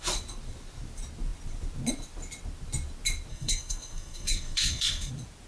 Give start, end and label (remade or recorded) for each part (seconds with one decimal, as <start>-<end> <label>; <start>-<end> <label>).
0.0-3.3 recorded; 3.3-5.1 remade; 5.1-5.5 recorded